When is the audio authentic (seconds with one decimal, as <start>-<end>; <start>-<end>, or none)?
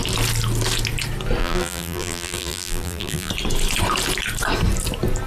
0.0-1.4; 3.3-5.3